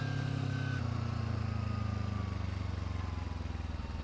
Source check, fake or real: real